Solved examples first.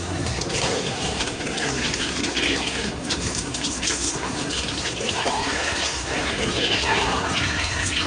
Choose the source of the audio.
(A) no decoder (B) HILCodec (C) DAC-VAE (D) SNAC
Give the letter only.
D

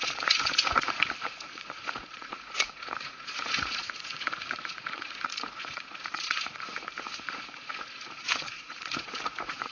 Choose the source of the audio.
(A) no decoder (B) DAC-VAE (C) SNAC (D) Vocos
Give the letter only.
D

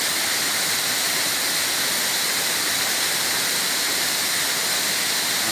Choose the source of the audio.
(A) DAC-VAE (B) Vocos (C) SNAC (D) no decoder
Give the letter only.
D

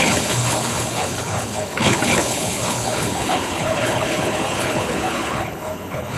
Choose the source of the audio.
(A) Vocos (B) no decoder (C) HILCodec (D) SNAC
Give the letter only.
C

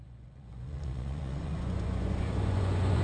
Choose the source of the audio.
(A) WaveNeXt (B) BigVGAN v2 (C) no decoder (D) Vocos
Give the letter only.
D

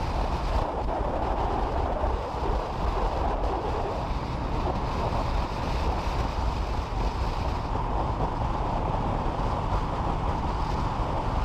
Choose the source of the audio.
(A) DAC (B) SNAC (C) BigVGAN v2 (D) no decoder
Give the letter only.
D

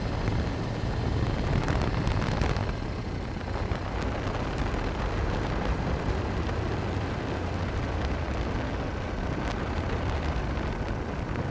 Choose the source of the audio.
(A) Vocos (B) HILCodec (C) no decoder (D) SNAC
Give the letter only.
C